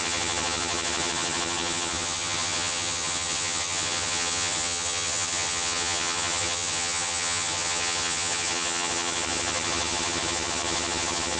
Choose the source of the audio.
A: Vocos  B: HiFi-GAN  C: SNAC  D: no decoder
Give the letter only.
B